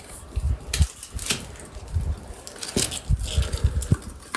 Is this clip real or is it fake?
real